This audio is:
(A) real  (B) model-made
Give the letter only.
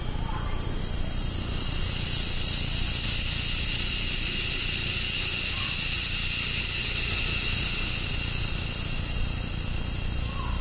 A